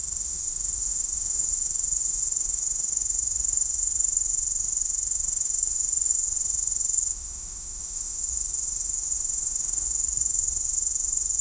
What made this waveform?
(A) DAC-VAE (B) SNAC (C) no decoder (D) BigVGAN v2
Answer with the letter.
A